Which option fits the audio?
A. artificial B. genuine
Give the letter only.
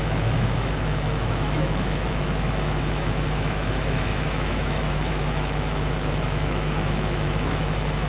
A